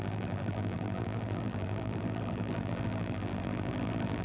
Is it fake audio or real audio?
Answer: fake